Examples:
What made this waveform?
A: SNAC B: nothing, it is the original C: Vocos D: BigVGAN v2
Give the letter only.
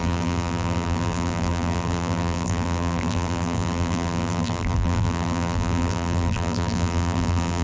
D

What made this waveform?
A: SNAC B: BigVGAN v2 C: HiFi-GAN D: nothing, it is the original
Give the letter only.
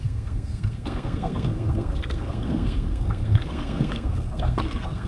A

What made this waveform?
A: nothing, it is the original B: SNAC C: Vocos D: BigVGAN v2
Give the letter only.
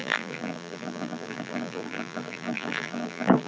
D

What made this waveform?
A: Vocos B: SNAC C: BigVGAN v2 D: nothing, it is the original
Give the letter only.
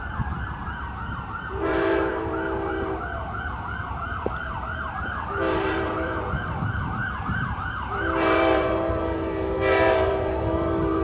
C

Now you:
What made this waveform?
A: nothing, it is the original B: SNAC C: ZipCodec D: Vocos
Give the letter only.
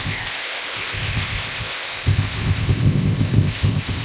C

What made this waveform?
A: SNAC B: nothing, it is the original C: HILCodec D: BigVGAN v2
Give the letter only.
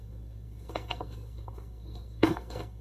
A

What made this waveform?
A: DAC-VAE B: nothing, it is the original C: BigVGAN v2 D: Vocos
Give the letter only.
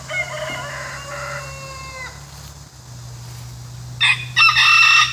B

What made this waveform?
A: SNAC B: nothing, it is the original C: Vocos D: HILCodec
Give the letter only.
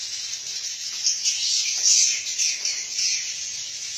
B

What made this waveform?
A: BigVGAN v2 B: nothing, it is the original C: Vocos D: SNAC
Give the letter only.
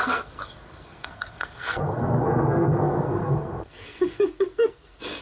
D